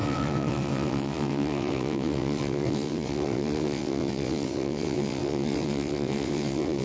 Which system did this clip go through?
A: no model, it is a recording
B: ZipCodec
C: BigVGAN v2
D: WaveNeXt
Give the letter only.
D